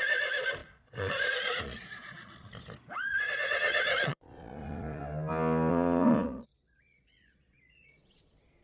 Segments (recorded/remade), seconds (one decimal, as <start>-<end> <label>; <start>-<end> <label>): 0.0-2.5 remade; 2.5-3.0 recorded; 3.0-5.0 remade; 5.0-5.7 recorded; 5.7-8.6 remade